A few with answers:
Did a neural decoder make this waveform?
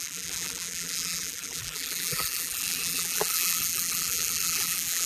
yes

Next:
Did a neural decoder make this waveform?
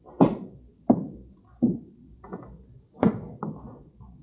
no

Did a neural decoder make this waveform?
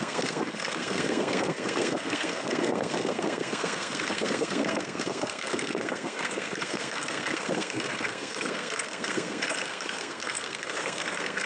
yes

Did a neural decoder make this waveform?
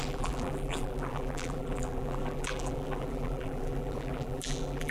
yes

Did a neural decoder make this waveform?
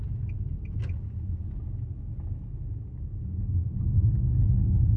no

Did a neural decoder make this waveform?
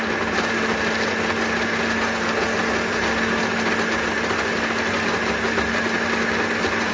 no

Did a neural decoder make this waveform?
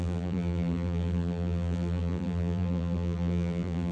yes